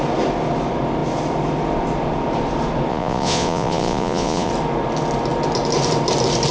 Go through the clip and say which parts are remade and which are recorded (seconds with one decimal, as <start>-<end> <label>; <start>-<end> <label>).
0.0-2.9 recorded; 2.9-4.5 remade; 4.5-6.5 recorded